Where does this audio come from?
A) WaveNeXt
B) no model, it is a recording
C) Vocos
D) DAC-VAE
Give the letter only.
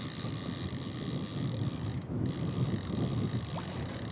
B